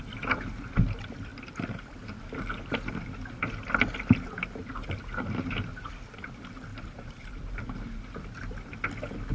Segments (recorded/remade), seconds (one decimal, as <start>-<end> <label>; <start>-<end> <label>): 0.0-6.7 recorded; 6.7-8.1 remade; 8.1-9.3 recorded